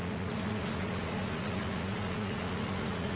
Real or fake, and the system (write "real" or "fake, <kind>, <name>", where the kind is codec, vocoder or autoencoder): fake, vocoder, Vocos